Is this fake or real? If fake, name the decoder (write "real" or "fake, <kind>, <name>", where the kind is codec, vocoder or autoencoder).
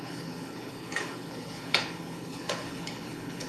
fake, codec, HILCodec